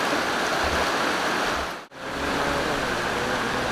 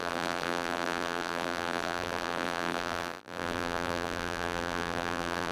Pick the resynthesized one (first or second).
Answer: second